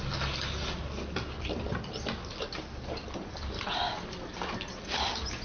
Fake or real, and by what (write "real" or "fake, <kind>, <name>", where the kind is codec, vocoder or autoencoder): real